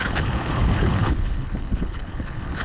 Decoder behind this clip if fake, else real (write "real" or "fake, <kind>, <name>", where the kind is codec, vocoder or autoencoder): fake, codec, HILCodec